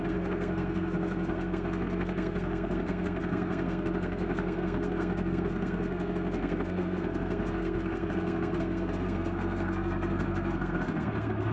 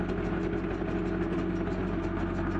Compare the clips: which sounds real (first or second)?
second